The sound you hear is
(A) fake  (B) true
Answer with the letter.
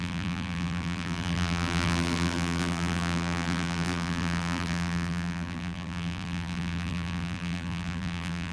A